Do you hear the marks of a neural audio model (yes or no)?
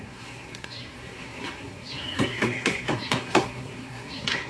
yes